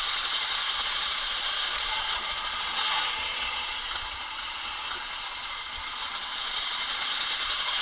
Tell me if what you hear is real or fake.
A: fake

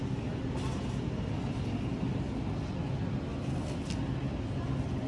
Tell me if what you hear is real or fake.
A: real